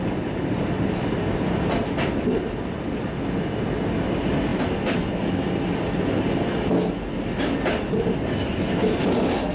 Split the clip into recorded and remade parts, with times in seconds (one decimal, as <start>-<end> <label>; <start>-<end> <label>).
0.0-9.5 recorded